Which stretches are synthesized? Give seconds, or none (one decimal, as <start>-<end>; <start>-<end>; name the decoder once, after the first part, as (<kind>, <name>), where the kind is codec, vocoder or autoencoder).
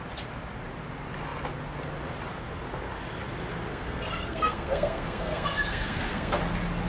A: 3.7-6.4 (codec, SNAC)